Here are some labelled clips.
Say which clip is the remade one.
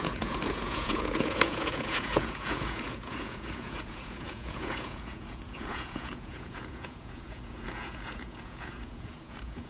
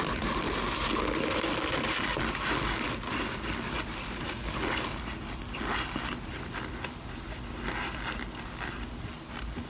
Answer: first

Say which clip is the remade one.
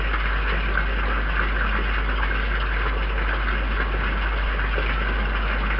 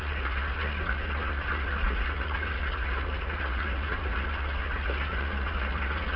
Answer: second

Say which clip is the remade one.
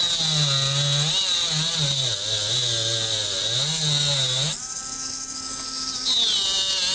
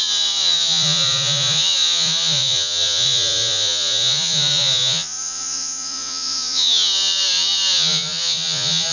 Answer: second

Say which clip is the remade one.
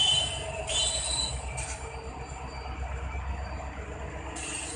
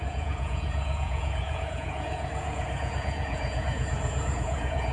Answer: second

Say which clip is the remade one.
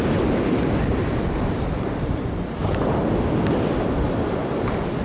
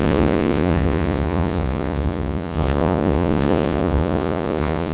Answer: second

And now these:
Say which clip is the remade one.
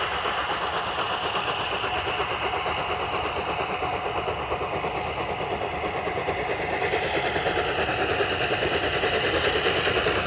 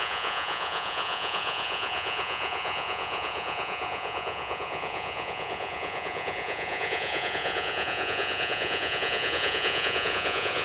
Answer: second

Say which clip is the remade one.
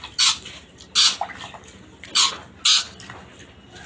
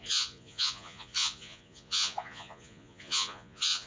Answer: second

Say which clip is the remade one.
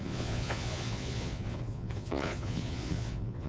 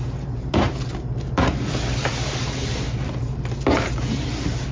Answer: first